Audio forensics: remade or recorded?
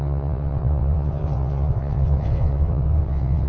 remade